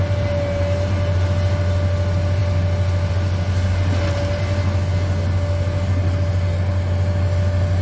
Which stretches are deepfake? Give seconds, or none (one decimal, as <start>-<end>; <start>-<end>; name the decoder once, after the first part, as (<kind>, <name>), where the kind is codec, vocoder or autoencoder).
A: none